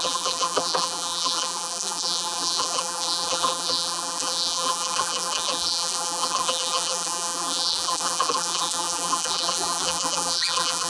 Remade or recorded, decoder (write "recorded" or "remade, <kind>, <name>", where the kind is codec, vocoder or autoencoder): remade, vocoder, BigVGAN v2